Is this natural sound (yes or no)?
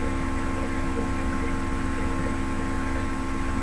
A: yes